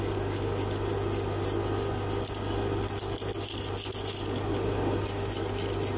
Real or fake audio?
real